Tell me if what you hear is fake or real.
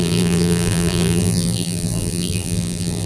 fake